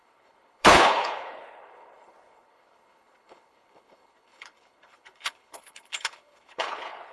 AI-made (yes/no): yes